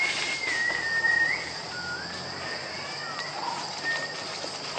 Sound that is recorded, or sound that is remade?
recorded